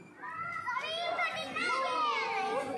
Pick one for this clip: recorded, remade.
recorded